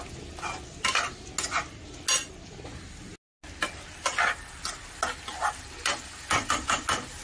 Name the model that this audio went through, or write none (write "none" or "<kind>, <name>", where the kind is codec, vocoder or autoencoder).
none